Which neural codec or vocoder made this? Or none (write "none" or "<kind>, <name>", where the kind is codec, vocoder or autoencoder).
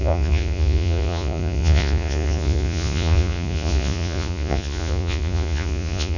vocoder, Vocos